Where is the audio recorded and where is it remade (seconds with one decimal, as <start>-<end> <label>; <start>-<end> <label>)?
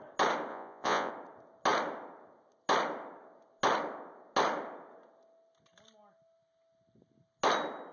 0.0-0.5 recorded; 0.5-1.1 remade; 1.1-7.9 recorded